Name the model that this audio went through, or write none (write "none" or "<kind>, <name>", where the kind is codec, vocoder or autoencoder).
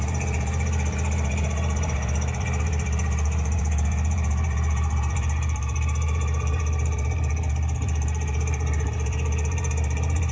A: vocoder, BigVGAN v2